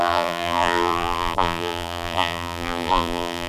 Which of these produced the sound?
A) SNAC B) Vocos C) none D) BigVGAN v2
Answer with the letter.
D